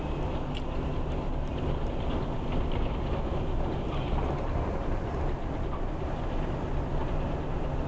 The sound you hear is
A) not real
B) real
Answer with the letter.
B